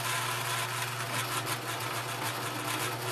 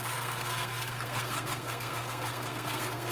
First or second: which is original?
first